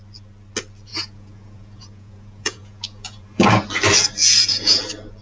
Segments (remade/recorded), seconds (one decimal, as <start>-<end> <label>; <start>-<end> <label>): 0.0-0.9 recorded; 0.9-3.5 remade; 3.5-4.2 recorded; 4.2-4.8 remade; 4.8-5.2 recorded